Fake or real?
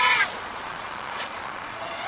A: fake